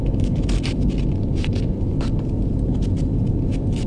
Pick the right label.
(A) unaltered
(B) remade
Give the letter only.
A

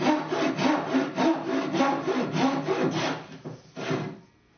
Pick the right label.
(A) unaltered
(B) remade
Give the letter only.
A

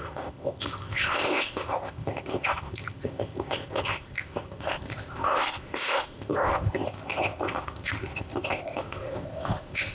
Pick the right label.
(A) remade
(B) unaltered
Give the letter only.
A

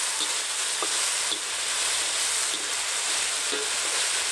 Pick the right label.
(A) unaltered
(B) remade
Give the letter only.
A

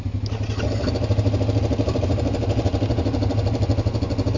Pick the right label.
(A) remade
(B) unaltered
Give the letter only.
B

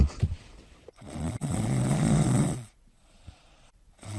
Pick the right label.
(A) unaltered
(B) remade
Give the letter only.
B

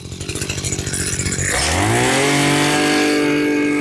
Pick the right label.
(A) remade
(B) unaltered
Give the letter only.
B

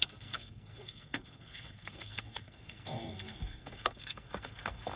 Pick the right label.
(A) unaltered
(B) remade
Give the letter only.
B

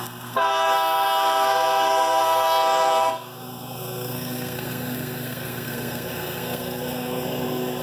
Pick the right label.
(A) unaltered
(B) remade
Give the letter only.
B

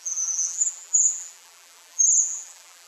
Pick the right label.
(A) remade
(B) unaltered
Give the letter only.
A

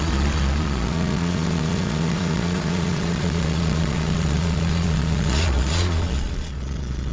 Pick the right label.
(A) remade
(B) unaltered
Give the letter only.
A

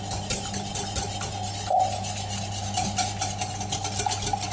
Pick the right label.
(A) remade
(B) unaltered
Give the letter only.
B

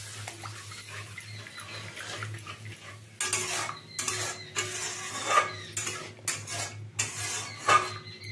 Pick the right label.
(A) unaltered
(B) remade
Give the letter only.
A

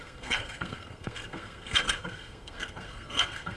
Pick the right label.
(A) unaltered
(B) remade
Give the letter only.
B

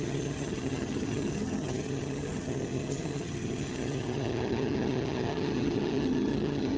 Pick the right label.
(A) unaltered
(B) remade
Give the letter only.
B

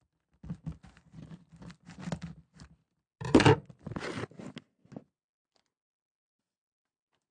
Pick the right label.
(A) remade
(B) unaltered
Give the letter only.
B